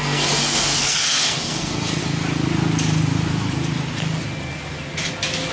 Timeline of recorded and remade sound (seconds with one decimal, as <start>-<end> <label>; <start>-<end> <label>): 0.0-2.0 remade; 2.0-5.5 recorded